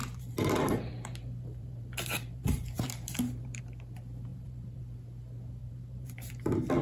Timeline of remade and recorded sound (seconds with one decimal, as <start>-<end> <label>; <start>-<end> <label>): 0.0-3.6 remade; 3.6-4.3 recorded; 4.3-4.8 remade; 4.8-5.6 recorded; 5.6-6.3 remade; 6.3-6.8 recorded

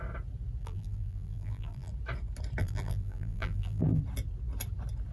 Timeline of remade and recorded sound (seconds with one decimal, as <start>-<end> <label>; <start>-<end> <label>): 0.0-0.6 recorded; 0.6-1.9 remade; 1.9-2.6 recorded; 2.6-4.0 remade; 4.0-5.1 recorded

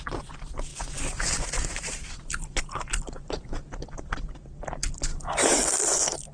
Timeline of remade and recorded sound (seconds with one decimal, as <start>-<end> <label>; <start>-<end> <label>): 0.0-0.7 recorded; 0.7-4.4 remade; 4.4-6.3 recorded

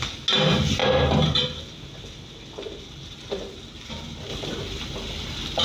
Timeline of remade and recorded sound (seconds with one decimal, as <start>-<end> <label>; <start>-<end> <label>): 0.0-0.8 recorded; 0.8-3.4 remade; 3.4-4.3 recorded; 4.3-5.6 remade

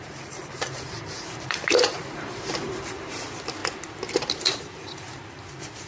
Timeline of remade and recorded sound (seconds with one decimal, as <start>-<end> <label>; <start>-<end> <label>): 0.0-3.6 remade; 3.6-4.4 recorded; 4.4-5.9 remade